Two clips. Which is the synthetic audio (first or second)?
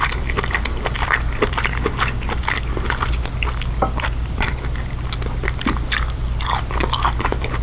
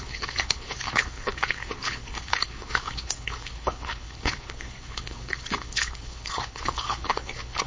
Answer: second